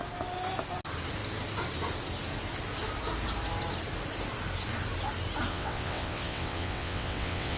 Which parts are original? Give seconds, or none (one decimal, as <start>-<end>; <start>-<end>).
0.0-5.5

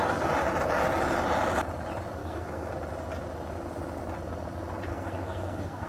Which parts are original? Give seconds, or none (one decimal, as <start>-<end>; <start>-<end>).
0.0-2.2; 2.7-4.9

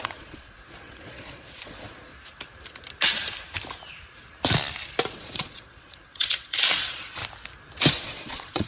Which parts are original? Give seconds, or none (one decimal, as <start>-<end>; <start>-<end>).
2.1-5.2; 7.2-7.9